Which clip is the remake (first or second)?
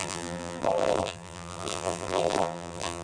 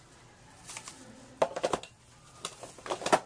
first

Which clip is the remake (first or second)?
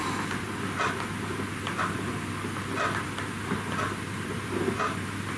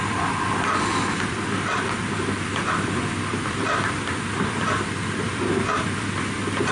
second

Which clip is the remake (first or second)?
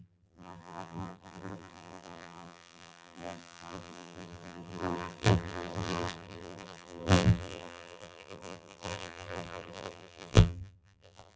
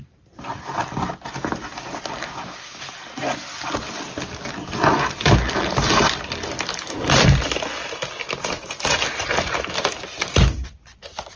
first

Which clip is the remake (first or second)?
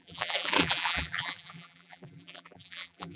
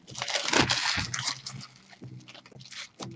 first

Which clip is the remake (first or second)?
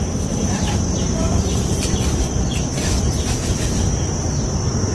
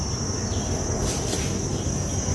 first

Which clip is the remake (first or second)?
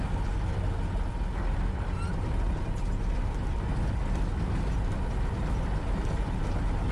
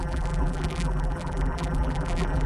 second